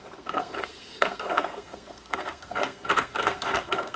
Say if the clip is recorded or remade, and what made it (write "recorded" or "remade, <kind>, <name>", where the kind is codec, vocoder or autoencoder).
remade, codec, SNAC